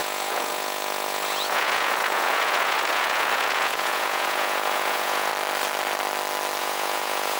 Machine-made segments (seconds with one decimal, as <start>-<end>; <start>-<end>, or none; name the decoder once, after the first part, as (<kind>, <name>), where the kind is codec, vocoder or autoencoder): 0.0-5.3 (vocoder, Vocos); 6.6-7.4